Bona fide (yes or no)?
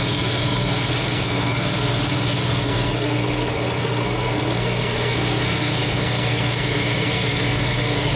no